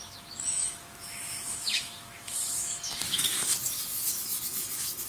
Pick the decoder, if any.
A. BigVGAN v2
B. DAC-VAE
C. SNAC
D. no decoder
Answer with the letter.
B